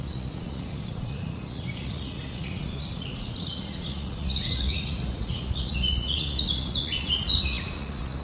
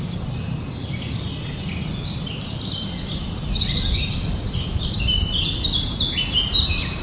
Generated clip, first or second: first